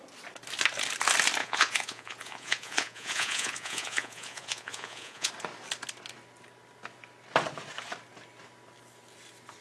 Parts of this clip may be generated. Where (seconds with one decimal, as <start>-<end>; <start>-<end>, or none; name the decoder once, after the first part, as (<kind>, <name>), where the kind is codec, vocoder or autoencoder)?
1.4-5.3 (vocoder, Vocos)

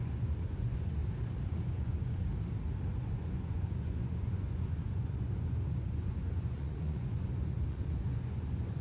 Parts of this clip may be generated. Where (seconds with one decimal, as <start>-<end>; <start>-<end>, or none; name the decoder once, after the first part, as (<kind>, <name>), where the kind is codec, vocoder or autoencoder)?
0.0-1.0 (vocoder, Vocos); 1.5-2.3; 3.0-8.8

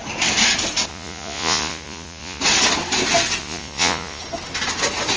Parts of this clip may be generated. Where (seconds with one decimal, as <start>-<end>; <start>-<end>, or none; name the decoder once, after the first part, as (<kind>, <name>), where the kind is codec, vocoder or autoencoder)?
0.9-2.4 (vocoder, Vocos); 3.4-4.2

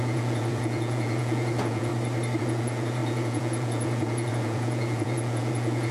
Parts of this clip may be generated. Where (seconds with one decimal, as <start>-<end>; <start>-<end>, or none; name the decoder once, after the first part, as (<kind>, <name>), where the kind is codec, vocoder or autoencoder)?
0.0-1.9 (vocoder, Vocos); 2.4-5.9

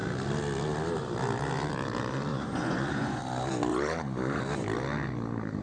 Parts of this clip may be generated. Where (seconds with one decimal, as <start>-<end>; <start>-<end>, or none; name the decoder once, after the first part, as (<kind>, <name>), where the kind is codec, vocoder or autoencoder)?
2.3-3.2 (vocoder, Vocos); 3.7-4.4